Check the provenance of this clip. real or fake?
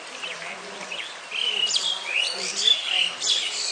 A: real